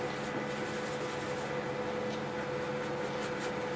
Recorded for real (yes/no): yes